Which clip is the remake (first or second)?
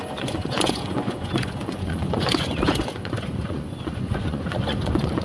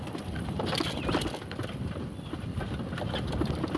first